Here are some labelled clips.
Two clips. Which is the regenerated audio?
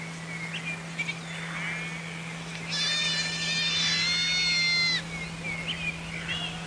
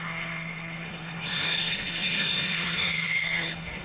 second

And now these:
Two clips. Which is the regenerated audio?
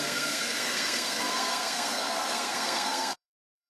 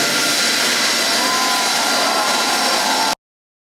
first